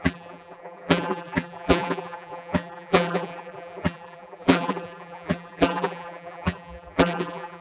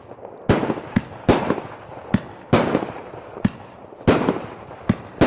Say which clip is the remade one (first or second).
first